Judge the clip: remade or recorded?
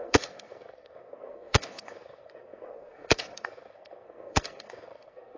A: remade